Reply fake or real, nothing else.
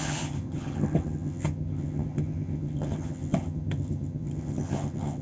fake